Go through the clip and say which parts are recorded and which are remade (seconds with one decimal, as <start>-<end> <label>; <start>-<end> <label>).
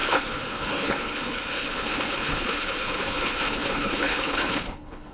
0.0-5.1 remade